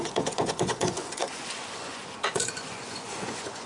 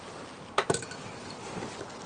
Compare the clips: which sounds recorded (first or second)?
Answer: second